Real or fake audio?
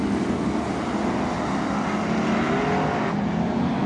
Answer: real